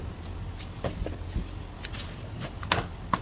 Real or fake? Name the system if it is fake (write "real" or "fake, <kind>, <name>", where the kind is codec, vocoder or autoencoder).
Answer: real